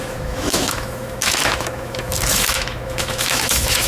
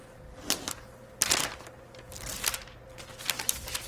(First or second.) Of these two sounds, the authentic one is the second